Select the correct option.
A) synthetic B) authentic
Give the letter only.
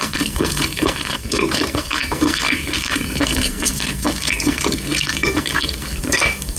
A